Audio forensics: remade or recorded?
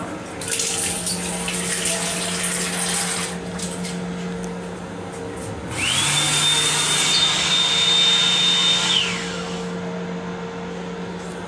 recorded